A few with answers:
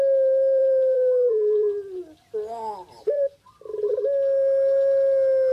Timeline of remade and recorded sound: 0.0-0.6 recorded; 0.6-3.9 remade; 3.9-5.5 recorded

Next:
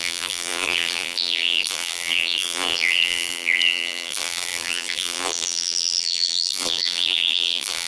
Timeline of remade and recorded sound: 0.0-7.9 remade

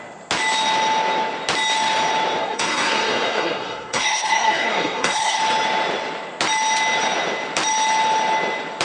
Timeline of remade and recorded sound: 0.0-2.4 recorded; 2.4-5.4 remade; 5.4-8.8 recorded

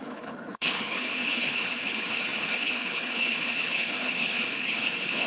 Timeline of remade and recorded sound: 0.0-5.3 remade